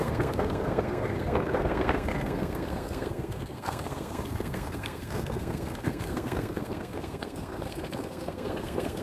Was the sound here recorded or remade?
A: remade